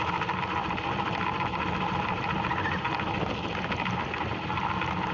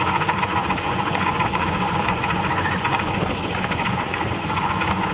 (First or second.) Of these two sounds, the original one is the first